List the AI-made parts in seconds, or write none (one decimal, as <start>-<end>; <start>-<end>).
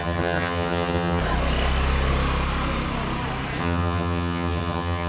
0.0-1.2; 3.6-5.1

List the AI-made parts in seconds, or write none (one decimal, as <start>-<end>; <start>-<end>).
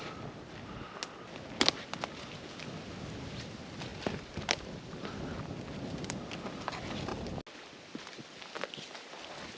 none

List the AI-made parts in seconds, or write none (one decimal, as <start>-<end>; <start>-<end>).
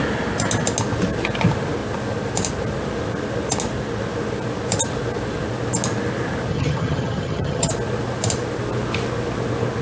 6.5-7.7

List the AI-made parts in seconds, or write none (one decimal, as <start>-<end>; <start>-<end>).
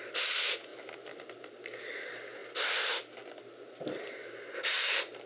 none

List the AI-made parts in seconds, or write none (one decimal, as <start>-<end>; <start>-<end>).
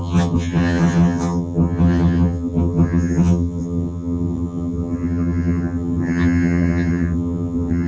0.0-7.9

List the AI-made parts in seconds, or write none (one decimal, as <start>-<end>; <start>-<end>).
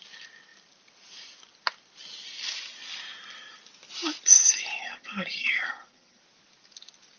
4.8-6.2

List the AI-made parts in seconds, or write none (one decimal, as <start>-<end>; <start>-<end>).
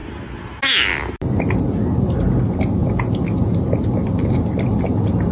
none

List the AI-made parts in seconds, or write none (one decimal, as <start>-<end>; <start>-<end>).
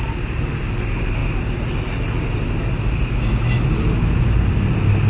none